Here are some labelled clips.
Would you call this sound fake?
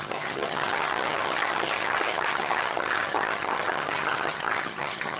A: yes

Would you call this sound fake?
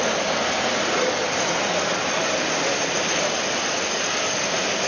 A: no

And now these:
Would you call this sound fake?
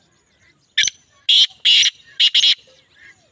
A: no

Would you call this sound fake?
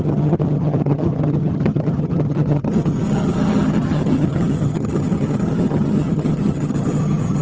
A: yes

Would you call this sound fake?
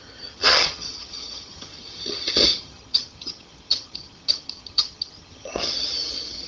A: yes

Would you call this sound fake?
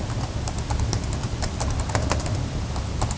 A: no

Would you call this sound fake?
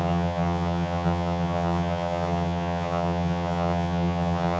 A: yes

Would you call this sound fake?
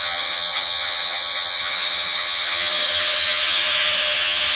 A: yes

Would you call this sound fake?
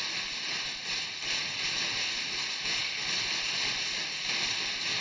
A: no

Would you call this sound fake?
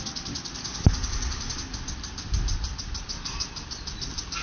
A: no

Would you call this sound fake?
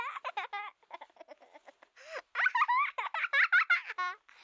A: no